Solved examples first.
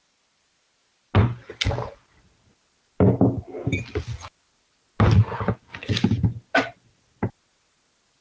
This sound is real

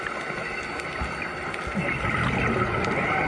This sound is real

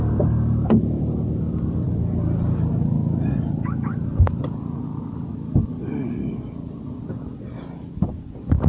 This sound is fake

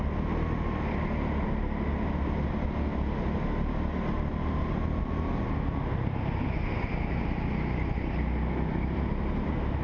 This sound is real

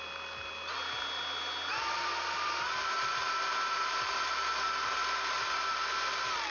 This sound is real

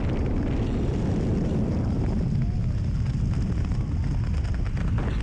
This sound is real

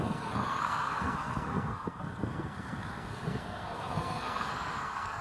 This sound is fake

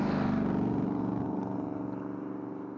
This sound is real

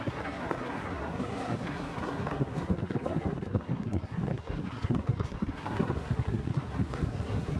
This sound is fake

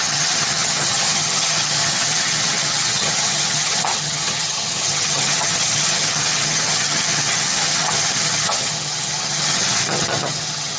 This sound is fake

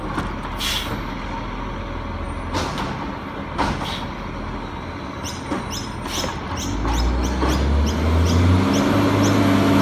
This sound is real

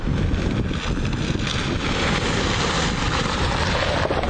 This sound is real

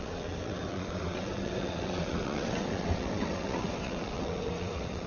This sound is fake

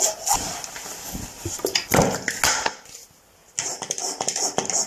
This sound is real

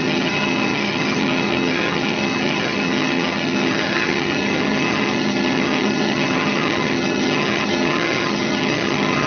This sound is fake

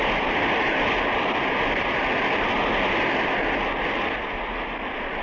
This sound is real